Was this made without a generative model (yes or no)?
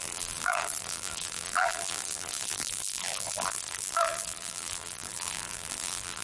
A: no